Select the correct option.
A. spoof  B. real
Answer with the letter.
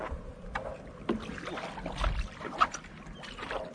B